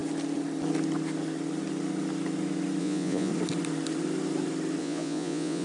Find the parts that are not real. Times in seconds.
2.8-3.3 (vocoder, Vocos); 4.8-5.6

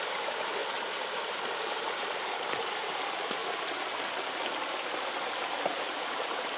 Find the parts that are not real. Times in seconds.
0.0-0.6 (vocoder, BigVGAN v2); 1.6-3.4; 6.1-6.6

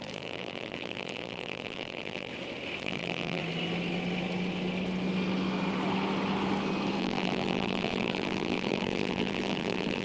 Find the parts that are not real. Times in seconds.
0.0-2.3 (vocoder, BigVGAN v2); 2.8-3.4; 7.0-10.0

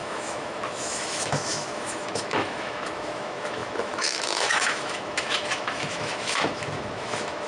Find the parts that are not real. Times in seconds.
0.0-7.5 (autoencoder, DAC-VAE)

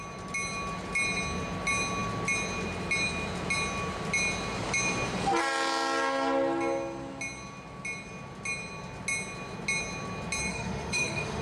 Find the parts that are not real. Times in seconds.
10.5-11.4 (autoencoder, DAC-VAE)

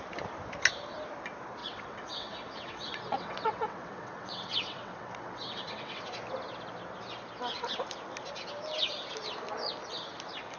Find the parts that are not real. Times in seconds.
1.6-6.0 (vocoder, WaveNeXt)

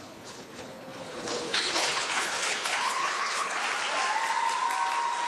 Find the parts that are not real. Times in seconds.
0.0-3.6 (codec, HILCodec)